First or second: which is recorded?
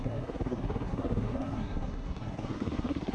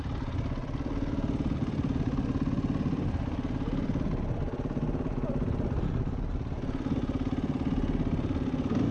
second